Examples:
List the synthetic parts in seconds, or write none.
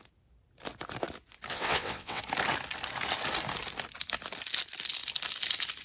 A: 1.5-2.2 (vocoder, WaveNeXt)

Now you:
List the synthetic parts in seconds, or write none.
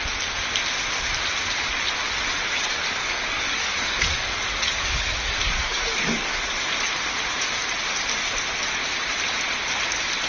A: 3.0-6.3 (codec, DAC)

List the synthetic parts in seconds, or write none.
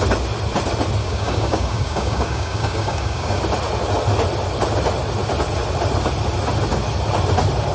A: 1.0-3.4 (codec, DAC)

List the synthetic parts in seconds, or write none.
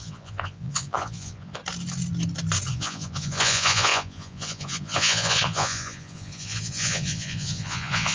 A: 0.0-1.6 (vocoder, Vocos); 2.7-8.1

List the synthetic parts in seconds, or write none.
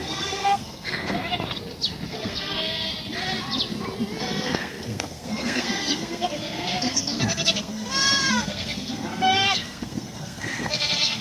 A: 0.0-1.2 (codec, SNAC); 2.1-2.9; 4.2-11.2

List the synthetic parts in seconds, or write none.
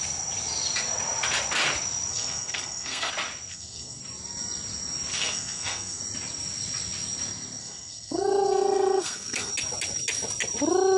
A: 2.1-3.1 (codec, SNAC); 3.5-4.0; 5.1-6.0; 7.6-9.5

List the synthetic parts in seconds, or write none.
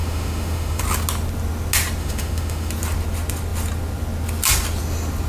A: 0.0-0.8 (autoencoder, DAC-VAE); 2.0-2.7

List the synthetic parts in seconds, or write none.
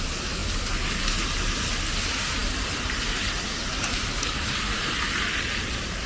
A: none